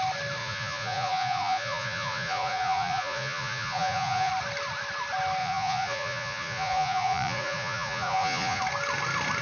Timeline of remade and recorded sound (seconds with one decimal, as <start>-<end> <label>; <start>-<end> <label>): 0.0-0.4 recorded; 0.4-4.3 remade; 4.3-5.4 recorded; 5.4-8.6 remade; 8.6-9.4 recorded

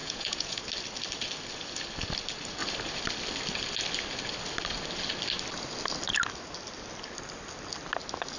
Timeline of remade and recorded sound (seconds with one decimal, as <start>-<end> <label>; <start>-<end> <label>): 0.0-0.6 remade; 0.6-8.4 recorded

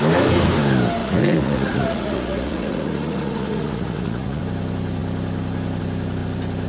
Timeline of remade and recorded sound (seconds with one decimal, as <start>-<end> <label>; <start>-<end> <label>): 0.0-1.0 recorded; 1.0-4.4 remade; 4.4-6.7 recorded

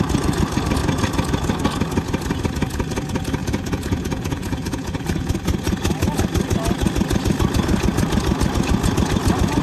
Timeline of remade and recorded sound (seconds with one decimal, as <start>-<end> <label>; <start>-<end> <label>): 0.0-3.4 recorded; 3.4-5.3 remade; 5.3-9.6 recorded

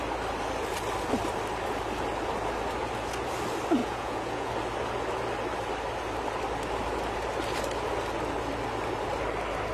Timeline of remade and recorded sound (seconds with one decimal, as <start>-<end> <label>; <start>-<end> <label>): 0.0-3.8 recorded; 3.8-4.5 remade; 4.5-9.7 recorded